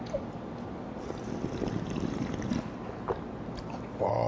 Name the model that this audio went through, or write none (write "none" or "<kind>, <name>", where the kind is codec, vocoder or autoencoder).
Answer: none